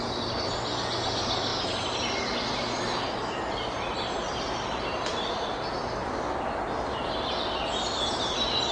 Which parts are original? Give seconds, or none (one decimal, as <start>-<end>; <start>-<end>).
0.0-8.7